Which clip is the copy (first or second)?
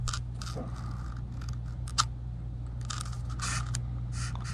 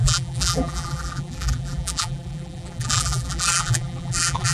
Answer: second